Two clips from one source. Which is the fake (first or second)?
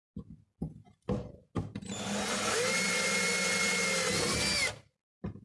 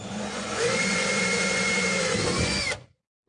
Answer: second